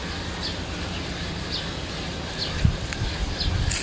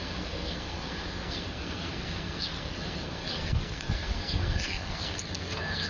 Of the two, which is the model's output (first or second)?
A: second